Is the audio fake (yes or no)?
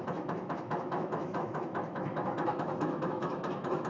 yes